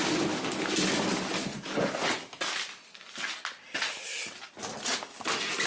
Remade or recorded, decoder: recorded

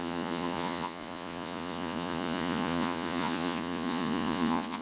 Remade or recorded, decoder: remade, vocoder, Vocos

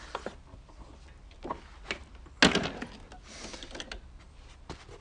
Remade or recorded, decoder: recorded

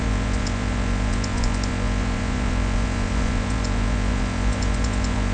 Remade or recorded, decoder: remade, vocoder, Vocos